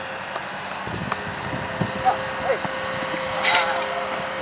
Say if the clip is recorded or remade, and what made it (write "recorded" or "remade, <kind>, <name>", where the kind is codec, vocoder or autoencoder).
recorded